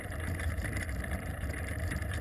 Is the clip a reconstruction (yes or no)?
yes